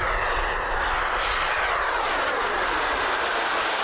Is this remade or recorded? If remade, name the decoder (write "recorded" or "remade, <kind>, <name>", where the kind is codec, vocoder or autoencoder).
recorded